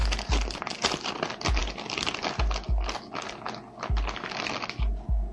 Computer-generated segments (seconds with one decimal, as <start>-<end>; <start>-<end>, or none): none